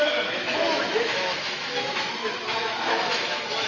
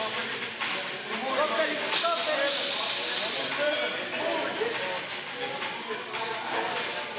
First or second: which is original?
second